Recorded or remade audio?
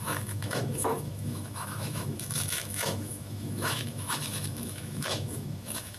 remade